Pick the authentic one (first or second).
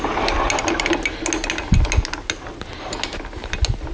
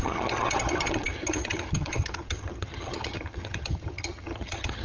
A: first